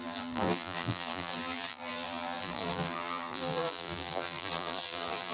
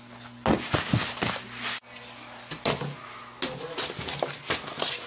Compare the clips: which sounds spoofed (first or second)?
first